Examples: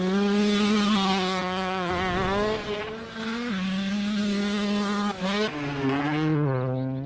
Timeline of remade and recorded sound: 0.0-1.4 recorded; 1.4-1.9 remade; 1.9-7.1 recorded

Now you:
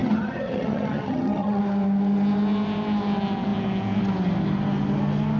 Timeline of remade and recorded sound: 0.0-1.6 remade; 1.6-5.4 recorded

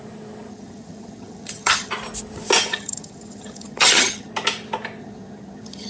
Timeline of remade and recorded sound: 0.0-0.5 recorded; 0.5-1.9 remade; 1.9-2.7 recorded; 2.7-4.3 remade; 4.3-5.0 recorded; 5.0-5.9 remade

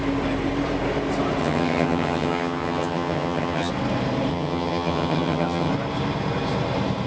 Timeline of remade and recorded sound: 0.0-1.4 recorded; 1.4-3.7 remade; 3.7-4.3 recorded; 4.3-5.7 remade; 5.7-7.1 recorded

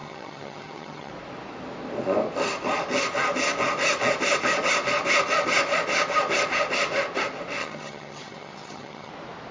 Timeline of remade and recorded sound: 0.0-1.1 remade; 1.1-7.6 recorded; 7.6-9.1 remade; 9.1-9.5 recorded

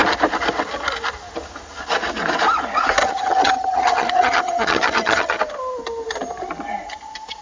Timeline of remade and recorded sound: 0.0-3.0 recorded; 3.0-5.4 remade; 5.4-7.4 recorded

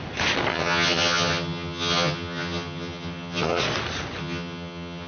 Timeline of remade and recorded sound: 0.0-0.5 recorded; 0.5-3.6 remade; 3.6-4.2 recorded; 4.2-5.1 remade